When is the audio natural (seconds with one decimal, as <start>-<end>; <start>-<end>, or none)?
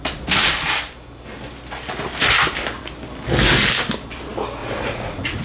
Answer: 0.0-4.6